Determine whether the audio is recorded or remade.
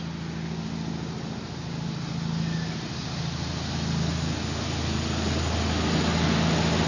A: recorded